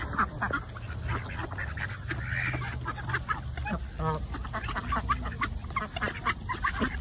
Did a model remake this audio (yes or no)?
no